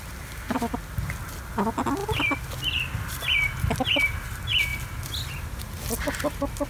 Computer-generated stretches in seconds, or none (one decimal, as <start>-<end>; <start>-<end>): none